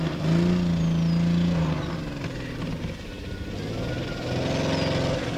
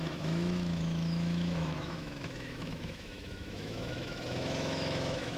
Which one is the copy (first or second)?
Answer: second